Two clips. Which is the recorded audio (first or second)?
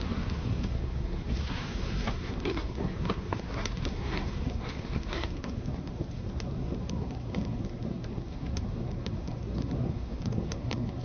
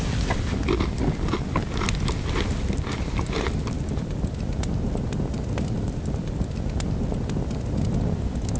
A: second